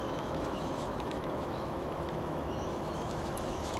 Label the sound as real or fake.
fake